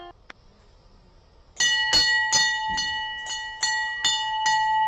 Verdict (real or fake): real